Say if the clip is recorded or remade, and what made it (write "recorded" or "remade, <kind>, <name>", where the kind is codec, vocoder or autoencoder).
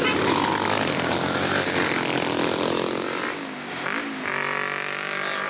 recorded